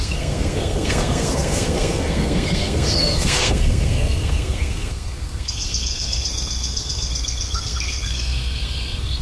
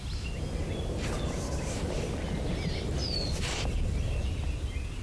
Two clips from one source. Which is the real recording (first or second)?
second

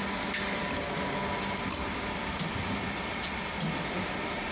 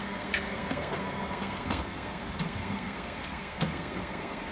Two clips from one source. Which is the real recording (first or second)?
first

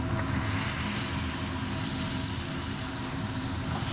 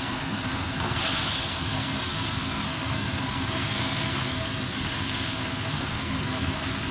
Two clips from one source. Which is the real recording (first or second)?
first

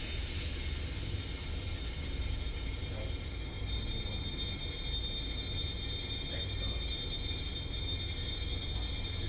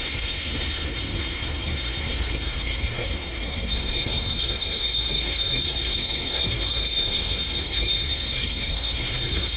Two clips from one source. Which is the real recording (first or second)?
first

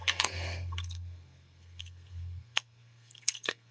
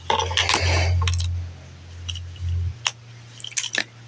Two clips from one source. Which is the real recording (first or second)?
second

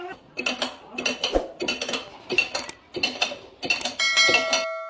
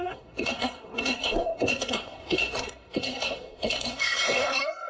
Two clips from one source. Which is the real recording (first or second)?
first